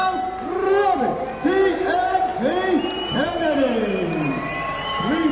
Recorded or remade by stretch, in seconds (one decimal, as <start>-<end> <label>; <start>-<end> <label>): 0.0-1.7 recorded; 1.7-2.3 remade; 2.3-3.1 recorded; 3.1-5.3 remade